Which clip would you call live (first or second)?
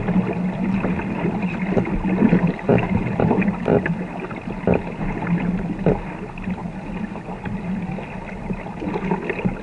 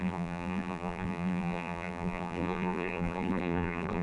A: first